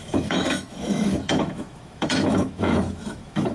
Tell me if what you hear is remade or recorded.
remade